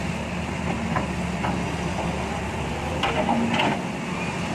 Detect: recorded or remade recorded